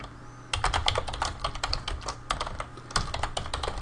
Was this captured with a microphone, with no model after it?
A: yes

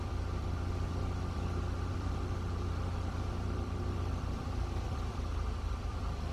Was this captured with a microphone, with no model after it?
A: no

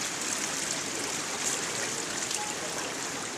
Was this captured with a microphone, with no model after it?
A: yes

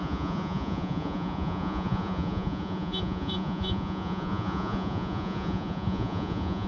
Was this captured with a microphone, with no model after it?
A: no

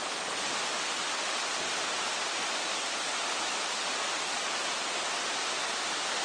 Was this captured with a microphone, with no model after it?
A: yes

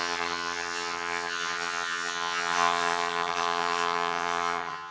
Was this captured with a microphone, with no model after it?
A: no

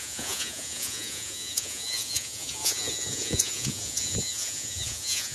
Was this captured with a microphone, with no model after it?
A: no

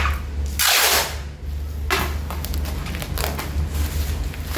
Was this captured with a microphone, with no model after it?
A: yes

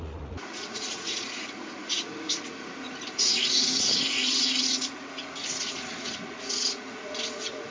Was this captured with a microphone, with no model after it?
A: no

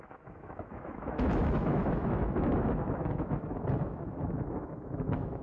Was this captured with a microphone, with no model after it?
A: no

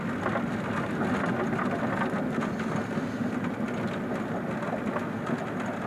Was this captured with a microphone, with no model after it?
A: yes